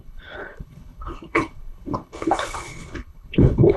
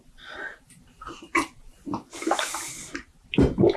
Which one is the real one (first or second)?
second